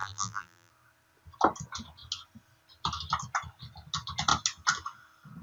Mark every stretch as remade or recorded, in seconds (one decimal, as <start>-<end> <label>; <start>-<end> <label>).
0.0-0.7 remade; 0.7-5.4 recorded